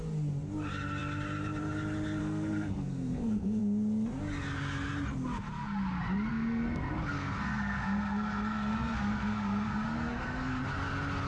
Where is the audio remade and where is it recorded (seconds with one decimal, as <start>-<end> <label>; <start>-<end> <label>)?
0.0-2.2 recorded; 2.2-3.6 remade; 3.6-6.3 recorded; 6.3-10.6 remade; 10.6-11.3 recorded